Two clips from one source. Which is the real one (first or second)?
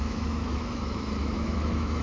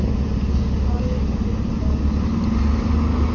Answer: second